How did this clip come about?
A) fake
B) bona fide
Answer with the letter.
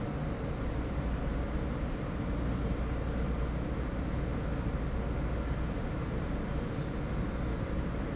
B